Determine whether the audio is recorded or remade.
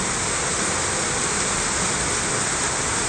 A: recorded